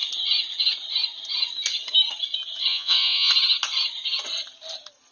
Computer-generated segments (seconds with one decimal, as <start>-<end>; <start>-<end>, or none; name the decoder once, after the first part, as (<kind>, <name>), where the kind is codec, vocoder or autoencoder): 2.7-3.3 (vocoder, WaveNeXt)